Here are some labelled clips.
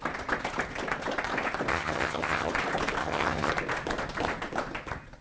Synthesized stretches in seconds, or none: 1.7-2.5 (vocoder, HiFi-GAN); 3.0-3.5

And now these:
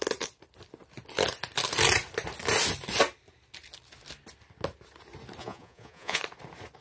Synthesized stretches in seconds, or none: 5.4-6.2 (vocoder, Vocos)

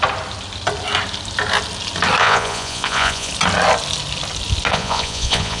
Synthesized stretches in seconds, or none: 2.2-3.3 (vocoder, Vocos); 4.7-5.6

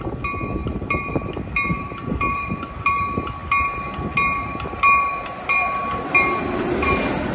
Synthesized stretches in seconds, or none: 0.6-2.9 (vocoder, BigVGAN v2)